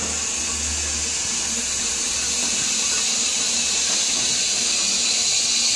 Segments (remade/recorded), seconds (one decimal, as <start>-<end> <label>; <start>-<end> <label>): 0.0-1.1 recorded; 1.1-4.6 remade; 4.6-5.8 recorded